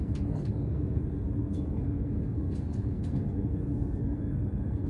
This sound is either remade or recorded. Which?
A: remade